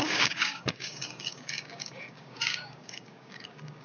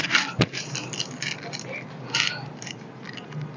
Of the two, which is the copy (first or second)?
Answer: first